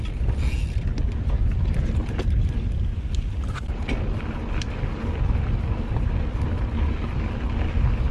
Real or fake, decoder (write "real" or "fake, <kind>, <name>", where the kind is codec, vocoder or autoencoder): real